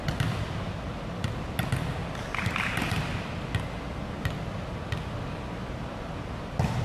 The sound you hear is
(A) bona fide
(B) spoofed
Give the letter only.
A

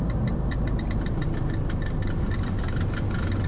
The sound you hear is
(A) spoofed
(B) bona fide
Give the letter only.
B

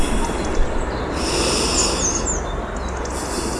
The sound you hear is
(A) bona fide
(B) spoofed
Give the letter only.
A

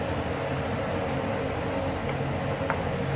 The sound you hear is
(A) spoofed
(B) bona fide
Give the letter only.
B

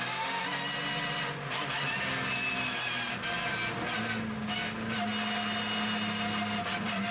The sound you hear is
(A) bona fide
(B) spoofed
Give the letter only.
A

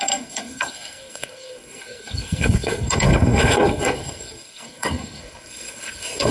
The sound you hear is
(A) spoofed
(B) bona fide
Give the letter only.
A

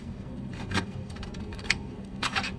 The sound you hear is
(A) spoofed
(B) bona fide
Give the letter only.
A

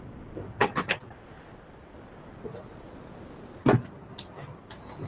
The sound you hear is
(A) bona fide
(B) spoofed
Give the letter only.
A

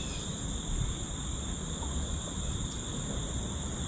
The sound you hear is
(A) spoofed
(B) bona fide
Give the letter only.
B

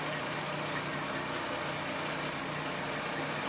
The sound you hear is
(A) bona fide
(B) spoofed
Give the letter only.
A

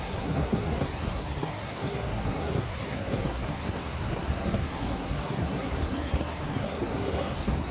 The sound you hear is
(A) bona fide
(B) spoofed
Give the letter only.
B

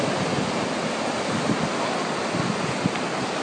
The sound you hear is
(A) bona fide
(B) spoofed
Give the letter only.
A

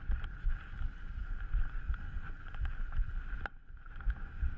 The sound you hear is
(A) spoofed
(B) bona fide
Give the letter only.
B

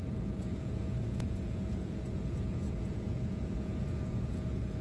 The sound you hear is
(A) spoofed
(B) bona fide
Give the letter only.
A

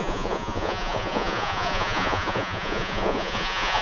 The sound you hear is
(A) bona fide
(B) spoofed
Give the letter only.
B